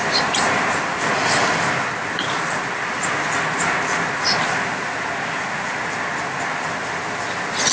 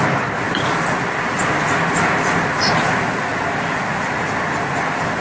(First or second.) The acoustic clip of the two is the first